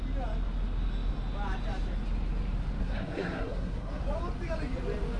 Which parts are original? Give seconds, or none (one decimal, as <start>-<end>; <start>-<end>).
0.0-2.8; 4.0-5.2